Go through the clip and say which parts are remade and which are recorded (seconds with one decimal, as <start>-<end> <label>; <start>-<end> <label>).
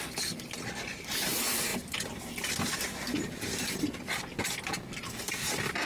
0.0-5.9 recorded